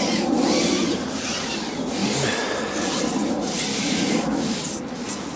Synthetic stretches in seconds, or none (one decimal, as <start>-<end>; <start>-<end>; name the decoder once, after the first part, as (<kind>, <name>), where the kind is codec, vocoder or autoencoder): 3.7-4.6 (codec, DAC)